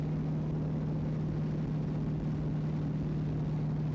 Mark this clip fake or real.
real